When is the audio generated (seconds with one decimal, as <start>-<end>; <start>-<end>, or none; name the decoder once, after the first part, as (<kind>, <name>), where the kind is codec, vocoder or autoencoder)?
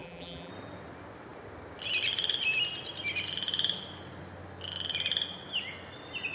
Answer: 0.0-0.5 (vocoder, BigVGAN v2)